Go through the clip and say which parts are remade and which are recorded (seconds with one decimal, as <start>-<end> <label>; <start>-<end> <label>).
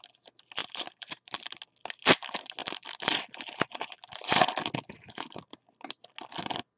0.0-0.6 recorded; 0.6-1.6 remade; 1.6-6.8 recorded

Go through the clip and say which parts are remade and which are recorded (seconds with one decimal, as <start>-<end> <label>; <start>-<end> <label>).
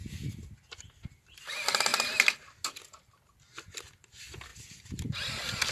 0.0-5.7 recorded